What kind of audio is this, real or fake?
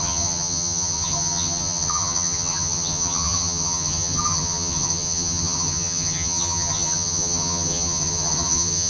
fake